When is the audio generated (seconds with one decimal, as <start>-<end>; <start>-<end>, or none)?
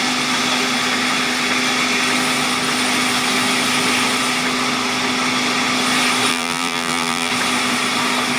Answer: 6.3-7.3